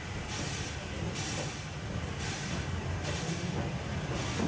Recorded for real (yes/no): yes